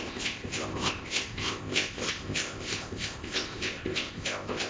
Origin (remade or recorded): remade